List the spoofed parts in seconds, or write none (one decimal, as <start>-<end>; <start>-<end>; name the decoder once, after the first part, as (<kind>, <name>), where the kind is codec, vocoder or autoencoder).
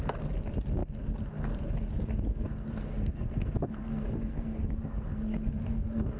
2.3-6.2 (codec, SNAC)